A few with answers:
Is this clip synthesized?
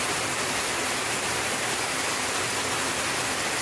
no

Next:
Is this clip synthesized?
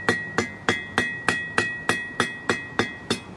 no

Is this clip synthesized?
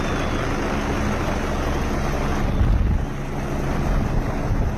no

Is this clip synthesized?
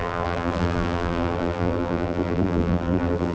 yes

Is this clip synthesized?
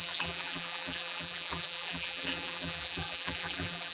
yes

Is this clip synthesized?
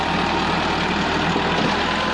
yes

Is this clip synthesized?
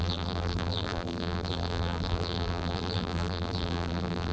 yes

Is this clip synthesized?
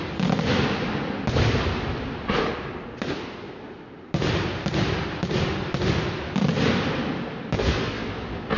no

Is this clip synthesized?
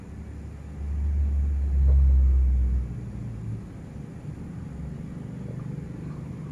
no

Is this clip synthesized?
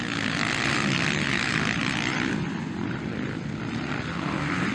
yes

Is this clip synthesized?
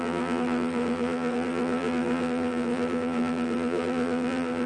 yes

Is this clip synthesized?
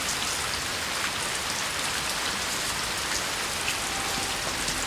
no